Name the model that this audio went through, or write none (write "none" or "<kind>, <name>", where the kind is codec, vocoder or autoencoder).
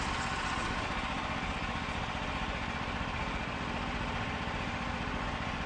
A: none